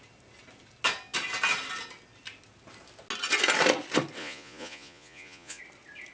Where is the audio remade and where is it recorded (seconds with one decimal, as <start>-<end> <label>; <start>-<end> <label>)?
0.0-4.2 recorded; 4.2-5.6 remade; 5.6-6.1 recorded